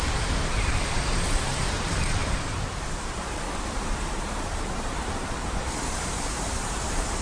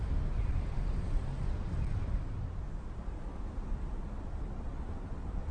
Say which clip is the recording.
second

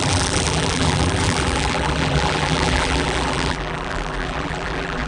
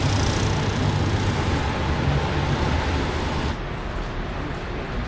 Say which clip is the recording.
second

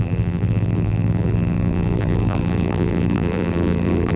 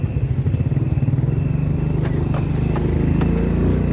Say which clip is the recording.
second